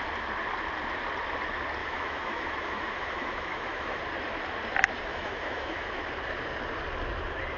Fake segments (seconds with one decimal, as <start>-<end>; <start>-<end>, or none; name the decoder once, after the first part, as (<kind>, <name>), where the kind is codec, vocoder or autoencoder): 1.8-4.0 (autoencoder, DAC-VAE); 5.1-6.0